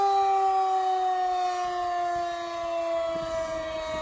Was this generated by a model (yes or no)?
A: no